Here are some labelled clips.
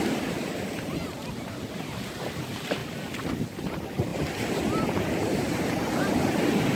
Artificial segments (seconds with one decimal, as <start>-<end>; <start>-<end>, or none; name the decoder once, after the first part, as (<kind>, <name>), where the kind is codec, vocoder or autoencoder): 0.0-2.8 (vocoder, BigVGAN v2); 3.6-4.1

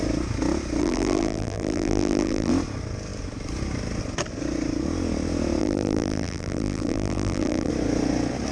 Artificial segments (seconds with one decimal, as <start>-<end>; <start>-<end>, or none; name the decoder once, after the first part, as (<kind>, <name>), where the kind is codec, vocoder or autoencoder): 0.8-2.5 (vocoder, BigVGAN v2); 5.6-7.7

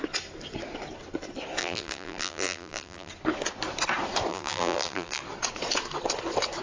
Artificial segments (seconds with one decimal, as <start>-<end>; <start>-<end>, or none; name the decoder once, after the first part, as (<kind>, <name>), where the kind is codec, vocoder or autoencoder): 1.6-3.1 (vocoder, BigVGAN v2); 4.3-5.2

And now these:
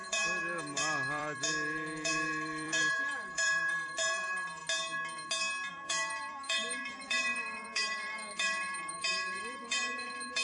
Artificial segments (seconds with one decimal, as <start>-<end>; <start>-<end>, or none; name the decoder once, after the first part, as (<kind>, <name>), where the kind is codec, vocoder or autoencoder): 0.0-4.6 (vocoder, BigVGAN v2); 5.7-10.4

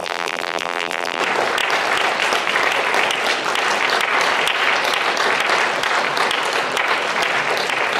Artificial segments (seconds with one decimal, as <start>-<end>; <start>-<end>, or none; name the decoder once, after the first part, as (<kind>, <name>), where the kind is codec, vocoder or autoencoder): 0.0-1.2 (vocoder, BigVGAN v2)

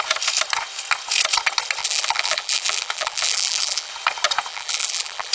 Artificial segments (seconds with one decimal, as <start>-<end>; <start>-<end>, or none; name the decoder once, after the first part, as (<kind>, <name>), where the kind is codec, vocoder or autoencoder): 1.8-3.9 (vocoder, BigVGAN v2); 4.5-5.3

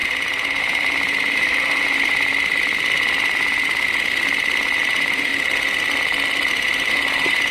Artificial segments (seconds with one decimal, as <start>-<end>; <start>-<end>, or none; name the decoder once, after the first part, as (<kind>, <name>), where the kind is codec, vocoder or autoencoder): 0.0-2.3 (vocoder, BigVGAN v2); 4.8-5.3; 6.5-7.5